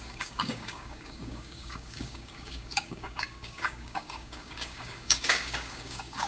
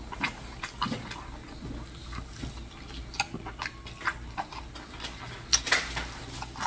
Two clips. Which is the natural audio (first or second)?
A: second